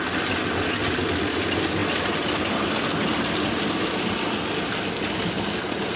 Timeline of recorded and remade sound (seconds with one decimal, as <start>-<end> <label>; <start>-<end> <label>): 0.0-6.0 recorded